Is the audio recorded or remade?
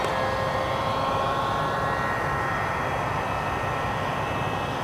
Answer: recorded